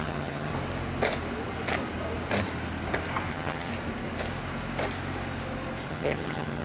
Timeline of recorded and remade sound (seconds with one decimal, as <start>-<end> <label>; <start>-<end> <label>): 0.0-0.5 remade; 0.5-3.3 recorded; 3.3-3.7 remade; 3.7-5.9 recorded; 5.9-6.6 remade

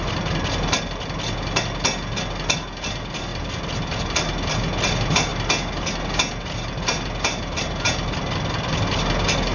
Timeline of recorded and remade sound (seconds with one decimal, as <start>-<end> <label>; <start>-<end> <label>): 0.0-9.5 recorded

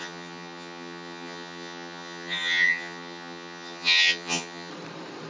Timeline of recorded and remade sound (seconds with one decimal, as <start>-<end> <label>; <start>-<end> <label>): 0.0-4.7 remade; 4.7-5.3 recorded

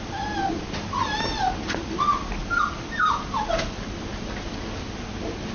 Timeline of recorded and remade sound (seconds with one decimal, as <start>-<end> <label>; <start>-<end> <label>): 0.0-5.5 recorded

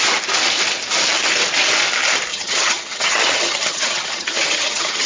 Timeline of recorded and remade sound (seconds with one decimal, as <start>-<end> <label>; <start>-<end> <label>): 0.0-2.3 recorded; 2.3-5.1 remade

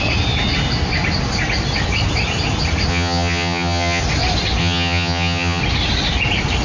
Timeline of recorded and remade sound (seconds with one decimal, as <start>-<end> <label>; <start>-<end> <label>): 0.0-2.9 recorded; 2.9-4.0 remade; 4.0-4.6 recorded; 4.6-5.6 remade; 5.6-6.6 recorded

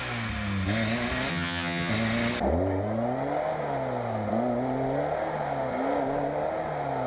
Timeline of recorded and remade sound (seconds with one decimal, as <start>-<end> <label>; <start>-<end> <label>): 0.0-1.3 recorded; 1.3-1.9 remade; 1.9-7.1 recorded